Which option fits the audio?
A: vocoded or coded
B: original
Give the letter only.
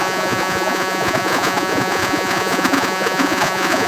A